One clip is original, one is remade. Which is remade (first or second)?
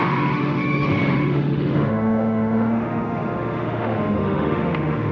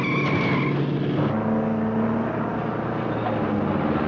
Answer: first